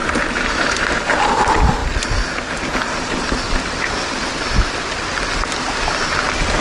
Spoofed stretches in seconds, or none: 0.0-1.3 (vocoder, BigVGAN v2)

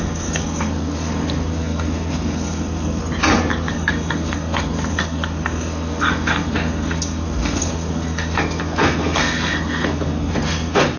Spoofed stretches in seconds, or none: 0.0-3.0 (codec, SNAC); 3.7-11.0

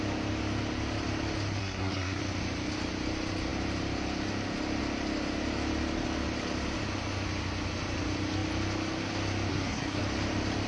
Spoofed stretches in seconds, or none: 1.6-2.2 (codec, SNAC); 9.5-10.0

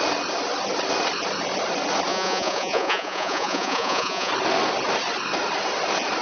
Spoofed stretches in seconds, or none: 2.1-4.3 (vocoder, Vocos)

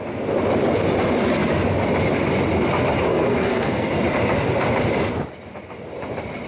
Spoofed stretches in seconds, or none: 3.1-3.9 (codec, SNAC)